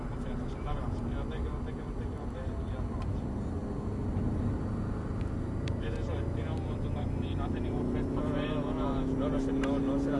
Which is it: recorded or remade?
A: recorded